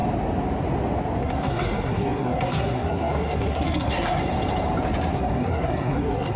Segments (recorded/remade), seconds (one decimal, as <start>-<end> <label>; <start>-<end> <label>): 0.0-1.2 recorded; 1.2-4.2 remade; 4.2-5.1 recorded; 5.1-6.4 remade